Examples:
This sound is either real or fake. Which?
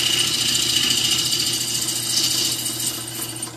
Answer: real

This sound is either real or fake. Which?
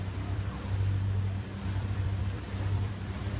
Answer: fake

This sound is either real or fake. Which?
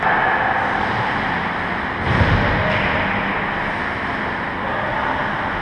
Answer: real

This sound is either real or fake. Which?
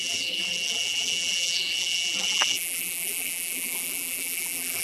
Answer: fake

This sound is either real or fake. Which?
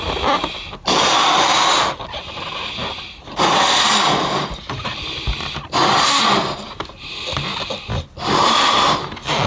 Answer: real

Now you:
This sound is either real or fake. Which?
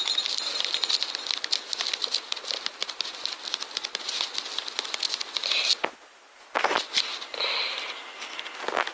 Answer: real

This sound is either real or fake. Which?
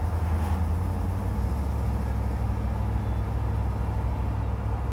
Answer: real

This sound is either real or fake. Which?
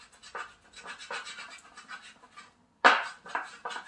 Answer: real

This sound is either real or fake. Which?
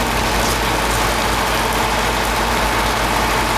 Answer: real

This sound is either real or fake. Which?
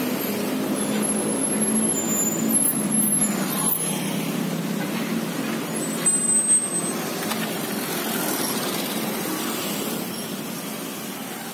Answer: real